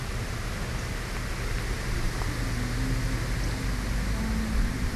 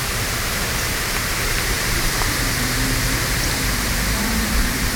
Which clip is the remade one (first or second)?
second